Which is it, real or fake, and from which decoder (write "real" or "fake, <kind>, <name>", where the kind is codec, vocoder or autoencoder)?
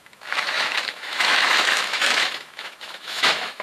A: fake, autoencoder, DAC-VAE